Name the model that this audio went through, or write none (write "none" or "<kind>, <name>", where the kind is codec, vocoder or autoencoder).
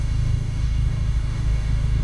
codec, DAC